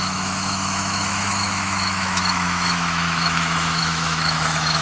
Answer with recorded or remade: remade